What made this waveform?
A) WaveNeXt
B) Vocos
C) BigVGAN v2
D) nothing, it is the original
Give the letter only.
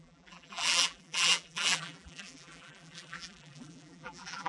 C